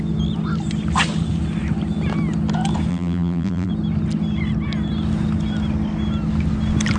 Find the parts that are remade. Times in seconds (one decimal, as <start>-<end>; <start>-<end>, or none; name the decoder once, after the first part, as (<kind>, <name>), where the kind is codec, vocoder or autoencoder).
2.9-3.7 (vocoder, BigVGAN v2)